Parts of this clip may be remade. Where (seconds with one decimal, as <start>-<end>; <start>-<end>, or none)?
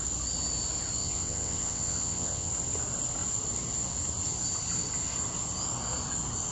1.0-2.5